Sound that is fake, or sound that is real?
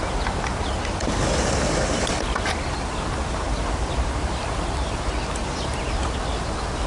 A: real